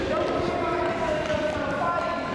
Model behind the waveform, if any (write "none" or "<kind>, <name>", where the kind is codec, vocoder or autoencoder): none